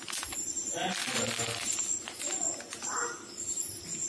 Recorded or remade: recorded